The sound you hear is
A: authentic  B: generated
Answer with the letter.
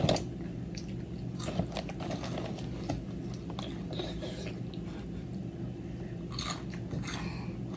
A